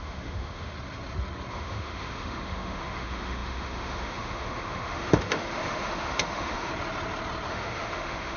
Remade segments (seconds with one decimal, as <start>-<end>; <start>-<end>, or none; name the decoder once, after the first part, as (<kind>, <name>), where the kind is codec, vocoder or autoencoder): 0.0-0.7 (autoencoder, DAC-VAE); 1.5-6.7; 7.5-8.4